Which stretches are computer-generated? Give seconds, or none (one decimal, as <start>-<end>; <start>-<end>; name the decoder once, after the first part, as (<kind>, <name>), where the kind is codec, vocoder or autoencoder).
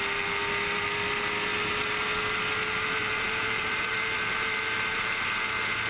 3.0-5.1 (vocoder, BigVGAN v2)